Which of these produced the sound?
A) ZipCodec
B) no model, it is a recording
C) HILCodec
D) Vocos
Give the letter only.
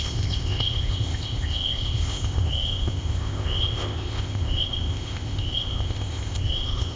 A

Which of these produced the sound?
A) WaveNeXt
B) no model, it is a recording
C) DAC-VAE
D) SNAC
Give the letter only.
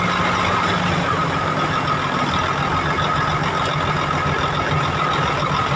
B